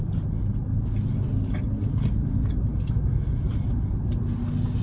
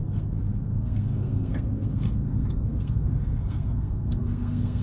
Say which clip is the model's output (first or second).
second